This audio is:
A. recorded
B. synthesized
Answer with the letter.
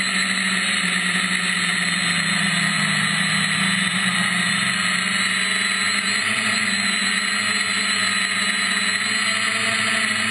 A